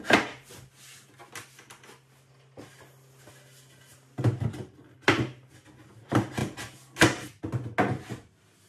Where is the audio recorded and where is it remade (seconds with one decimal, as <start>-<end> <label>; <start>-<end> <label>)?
0.0-8.7 recorded